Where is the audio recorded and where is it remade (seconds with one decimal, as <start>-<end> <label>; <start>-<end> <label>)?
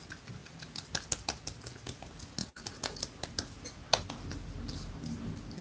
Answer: 0.0-2.4 recorded; 2.4-3.0 remade; 3.0-5.6 recorded